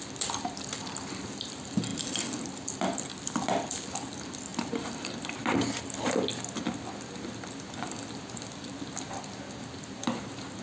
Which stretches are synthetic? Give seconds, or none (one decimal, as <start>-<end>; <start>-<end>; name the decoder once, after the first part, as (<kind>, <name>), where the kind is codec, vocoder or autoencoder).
none